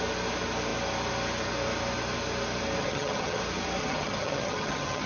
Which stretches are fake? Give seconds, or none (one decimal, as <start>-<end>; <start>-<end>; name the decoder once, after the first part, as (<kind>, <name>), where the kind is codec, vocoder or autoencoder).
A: 2.8-3.4 (vocoder, HiFi-GAN); 3.8-5.1